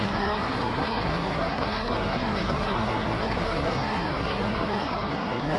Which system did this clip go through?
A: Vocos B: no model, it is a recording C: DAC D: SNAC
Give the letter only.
D